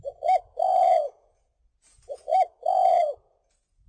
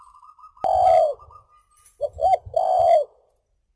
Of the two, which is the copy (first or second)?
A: first